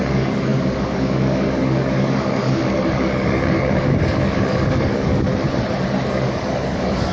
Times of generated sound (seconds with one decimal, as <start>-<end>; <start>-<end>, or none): 0.0-5.3; 6.1-7.1